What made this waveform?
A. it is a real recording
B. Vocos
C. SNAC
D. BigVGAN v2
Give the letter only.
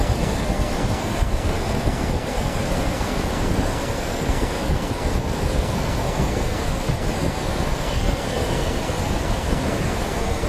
C